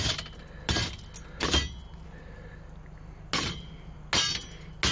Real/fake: real